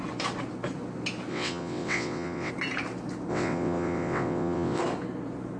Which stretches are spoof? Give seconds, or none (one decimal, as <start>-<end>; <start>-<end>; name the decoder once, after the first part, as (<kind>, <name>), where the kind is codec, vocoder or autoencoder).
1.3-2.5 (vocoder, WaveNeXt); 3.3-4.8